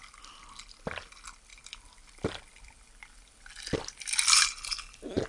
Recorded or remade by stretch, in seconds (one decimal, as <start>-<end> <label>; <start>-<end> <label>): 0.0-1.5 recorded; 1.5-4.7 remade; 4.7-5.3 recorded